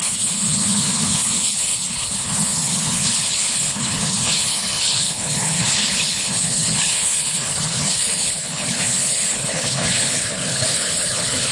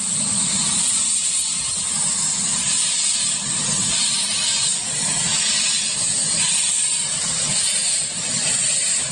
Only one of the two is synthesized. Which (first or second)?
first